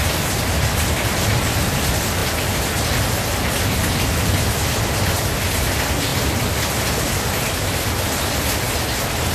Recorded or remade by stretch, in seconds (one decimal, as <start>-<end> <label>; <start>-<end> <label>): 0.0-9.3 recorded